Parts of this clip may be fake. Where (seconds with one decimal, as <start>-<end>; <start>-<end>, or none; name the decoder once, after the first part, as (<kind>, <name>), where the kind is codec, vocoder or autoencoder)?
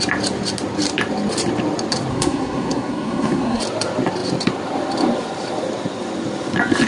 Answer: 2.1-3.6 (codec, SNAC)